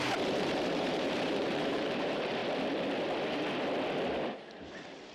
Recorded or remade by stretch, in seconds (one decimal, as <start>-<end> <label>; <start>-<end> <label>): 0.0-2.4 remade; 2.4-5.1 recorded